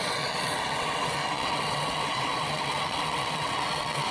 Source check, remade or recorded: remade